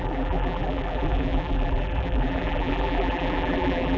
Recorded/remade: remade